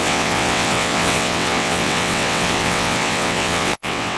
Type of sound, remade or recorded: remade